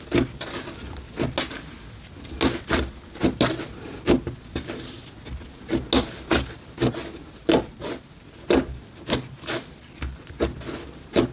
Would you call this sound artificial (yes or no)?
no